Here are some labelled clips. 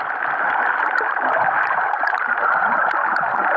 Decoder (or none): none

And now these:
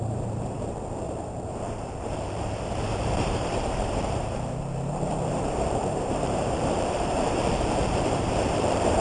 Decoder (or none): vocoder, BigVGAN v2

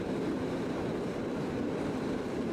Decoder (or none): vocoder, BigVGAN v2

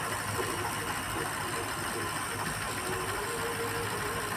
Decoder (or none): none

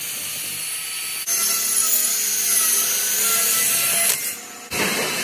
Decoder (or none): none